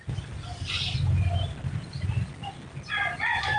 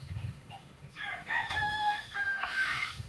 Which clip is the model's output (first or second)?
second